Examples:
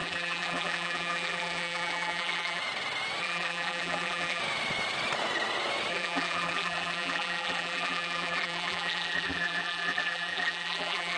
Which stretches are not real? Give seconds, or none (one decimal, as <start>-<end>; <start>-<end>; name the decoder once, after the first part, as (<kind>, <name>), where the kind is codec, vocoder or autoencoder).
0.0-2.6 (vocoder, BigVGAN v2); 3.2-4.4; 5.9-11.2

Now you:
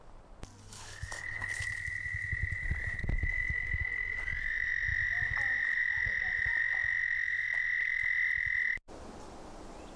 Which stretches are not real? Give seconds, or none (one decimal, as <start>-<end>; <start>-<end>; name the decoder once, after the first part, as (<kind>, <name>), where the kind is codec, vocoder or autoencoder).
0.6-1.6 (codec, HILCodec)

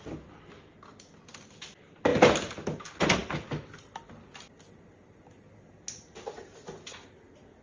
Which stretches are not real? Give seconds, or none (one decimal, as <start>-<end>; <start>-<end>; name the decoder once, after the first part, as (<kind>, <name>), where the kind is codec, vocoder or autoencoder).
none

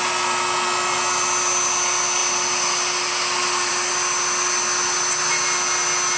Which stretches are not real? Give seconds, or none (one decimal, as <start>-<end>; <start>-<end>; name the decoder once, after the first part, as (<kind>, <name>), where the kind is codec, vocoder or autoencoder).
none